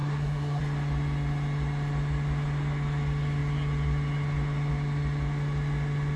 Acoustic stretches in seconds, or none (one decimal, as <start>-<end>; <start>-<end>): 0.6-6.2